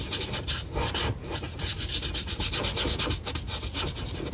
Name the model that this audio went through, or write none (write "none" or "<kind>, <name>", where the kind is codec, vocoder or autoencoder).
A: none